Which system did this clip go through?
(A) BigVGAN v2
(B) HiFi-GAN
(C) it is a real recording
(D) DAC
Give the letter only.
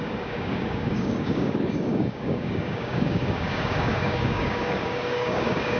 D